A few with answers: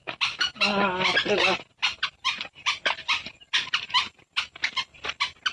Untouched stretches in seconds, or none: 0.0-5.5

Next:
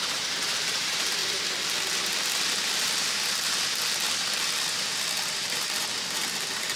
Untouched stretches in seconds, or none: 1.2-5.3

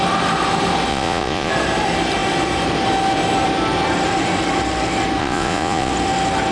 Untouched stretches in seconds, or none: 0.0-0.9; 1.5-5.2; 5.9-6.5

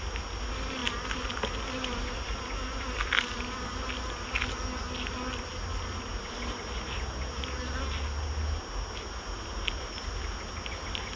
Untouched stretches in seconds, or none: 0.0-11.2

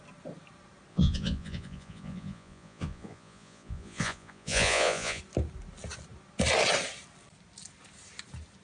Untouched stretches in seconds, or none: 0.0-0.9; 5.2-8.6